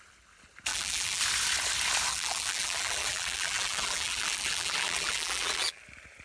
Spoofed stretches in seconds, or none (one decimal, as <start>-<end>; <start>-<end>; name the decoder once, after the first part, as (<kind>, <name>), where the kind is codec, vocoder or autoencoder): 0.7-1.2 (vocoder, BigVGAN v2); 2.1-5.8